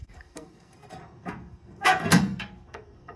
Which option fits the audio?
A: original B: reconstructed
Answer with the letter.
B